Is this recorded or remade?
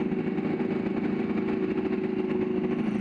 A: recorded